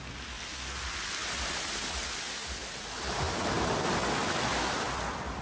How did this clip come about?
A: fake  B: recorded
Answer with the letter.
B